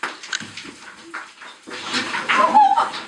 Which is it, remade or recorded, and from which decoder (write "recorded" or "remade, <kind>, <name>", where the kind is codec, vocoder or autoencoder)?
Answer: remade, vocoder, BigVGAN v2